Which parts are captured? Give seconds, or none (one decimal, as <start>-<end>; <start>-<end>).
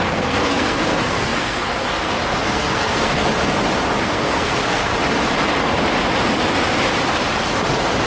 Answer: 3.3-4.0; 4.9-8.1